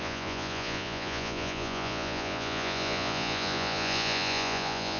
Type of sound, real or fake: fake